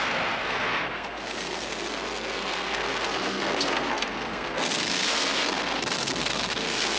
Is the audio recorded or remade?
remade